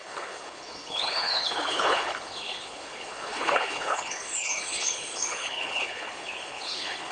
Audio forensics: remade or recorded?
remade